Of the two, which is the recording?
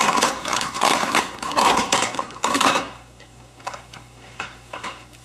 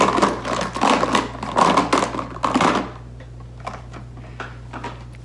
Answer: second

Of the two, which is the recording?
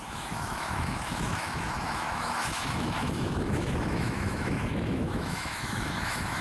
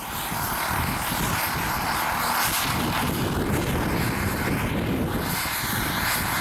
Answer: second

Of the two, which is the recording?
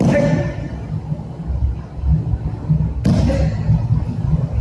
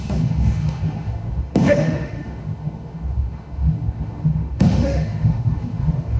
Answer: first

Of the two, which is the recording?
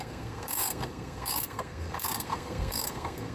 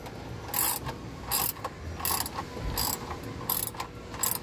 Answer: second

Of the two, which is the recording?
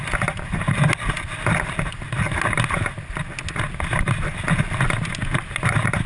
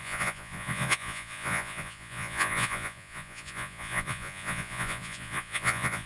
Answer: first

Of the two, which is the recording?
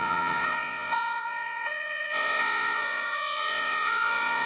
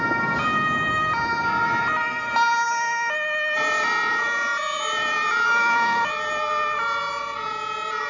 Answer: second